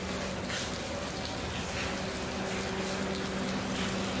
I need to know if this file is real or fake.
real